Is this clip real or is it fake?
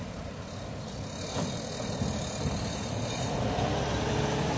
real